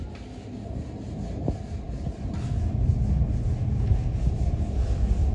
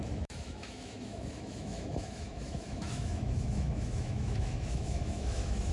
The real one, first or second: first